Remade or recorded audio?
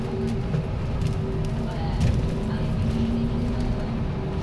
recorded